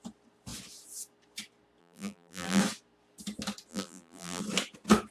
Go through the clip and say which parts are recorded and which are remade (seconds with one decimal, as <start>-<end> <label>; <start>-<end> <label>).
0.0-1.8 recorded; 1.8-2.6 remade; 2.6-3.7 recorded; 3.7-4.4 remade; 4.4-5.1 recorded